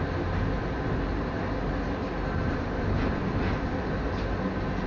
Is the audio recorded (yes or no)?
yes